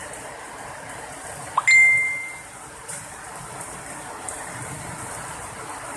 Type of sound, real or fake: real